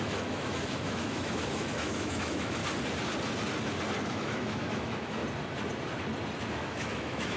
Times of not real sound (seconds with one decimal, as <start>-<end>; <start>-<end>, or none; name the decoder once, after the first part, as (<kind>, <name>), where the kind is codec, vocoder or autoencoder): 0.0-2.6 (autoencoder, DAC-VAE); 4.1-5.2; 6.5-7.4

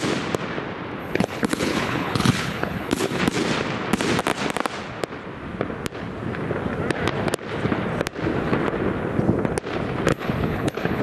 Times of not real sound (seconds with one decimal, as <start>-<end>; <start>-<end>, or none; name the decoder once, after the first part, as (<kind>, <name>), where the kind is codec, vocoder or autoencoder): 1.0-3.2 (codec, HILCodec); 10.1-11.0

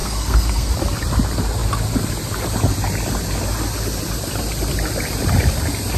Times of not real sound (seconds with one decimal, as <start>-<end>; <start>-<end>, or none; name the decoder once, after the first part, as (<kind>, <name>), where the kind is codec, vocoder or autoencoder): 0.0-0.7 (codec, SNAC)

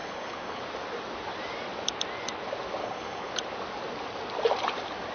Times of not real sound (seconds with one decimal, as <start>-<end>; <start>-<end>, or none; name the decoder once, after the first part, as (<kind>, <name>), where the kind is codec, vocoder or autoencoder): 0.0-0.6 (codec, HILCodec); 2.8-3.3

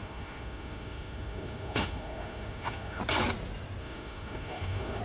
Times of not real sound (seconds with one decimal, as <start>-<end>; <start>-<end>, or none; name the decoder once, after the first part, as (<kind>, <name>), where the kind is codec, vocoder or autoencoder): 0.0-3.0 (autoencoder, DAC-VAE); 3.8-5.0

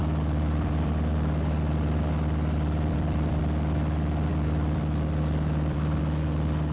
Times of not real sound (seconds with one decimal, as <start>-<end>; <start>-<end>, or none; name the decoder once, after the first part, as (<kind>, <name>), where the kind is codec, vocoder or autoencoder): 0.0-3.4 (vocoder, BigVGAN v2); 4.3-6.0